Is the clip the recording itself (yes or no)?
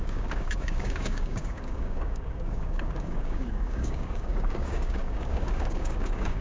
no